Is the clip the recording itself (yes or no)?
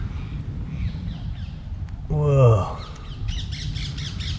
yes